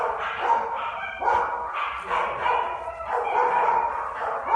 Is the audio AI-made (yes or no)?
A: no